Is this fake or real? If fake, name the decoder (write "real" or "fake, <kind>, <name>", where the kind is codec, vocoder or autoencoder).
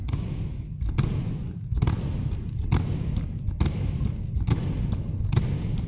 real